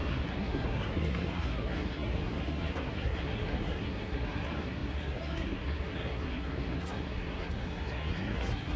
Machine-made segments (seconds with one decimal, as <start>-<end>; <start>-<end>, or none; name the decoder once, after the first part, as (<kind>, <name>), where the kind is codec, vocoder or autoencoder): 0.0-8.8 (codec, SNAC)